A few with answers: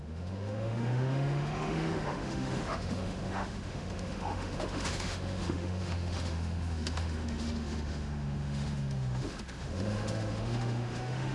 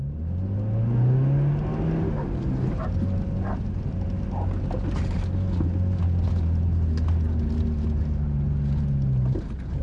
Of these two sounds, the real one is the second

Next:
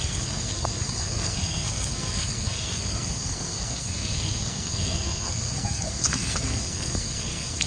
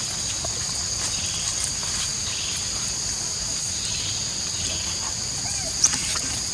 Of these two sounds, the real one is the second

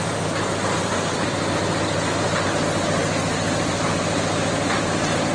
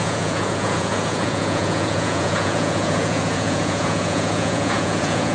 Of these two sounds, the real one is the first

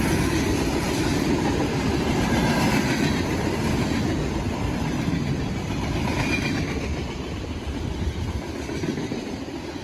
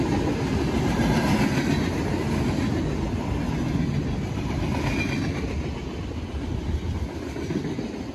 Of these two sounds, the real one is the second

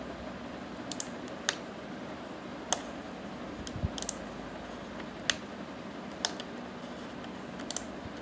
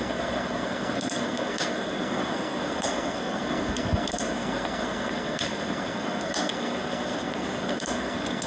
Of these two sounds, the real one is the first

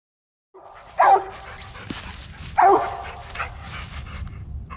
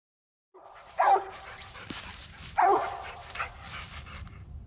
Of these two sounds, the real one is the first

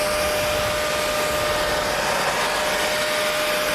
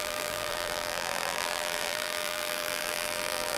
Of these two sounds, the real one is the first